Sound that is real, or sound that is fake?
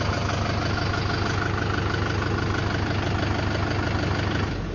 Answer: real